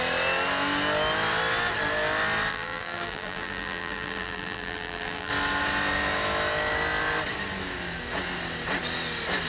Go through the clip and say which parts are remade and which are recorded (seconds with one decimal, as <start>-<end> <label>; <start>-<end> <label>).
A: 0.0-2.5 recorded; 2.5-5.3 remade; 5.3-9.5 recorded